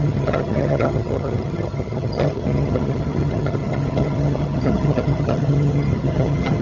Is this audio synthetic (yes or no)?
yes